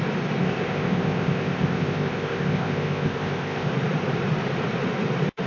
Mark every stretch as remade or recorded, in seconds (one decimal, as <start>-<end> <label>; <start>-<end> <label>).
0.0-0.4 recorded; 0.4-3.7 remade; 3.7-5.5 recorded